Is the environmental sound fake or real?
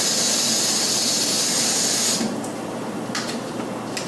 real